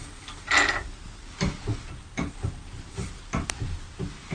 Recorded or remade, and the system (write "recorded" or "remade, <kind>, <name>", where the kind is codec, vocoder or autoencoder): recorded